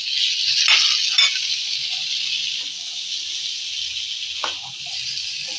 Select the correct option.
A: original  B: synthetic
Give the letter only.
A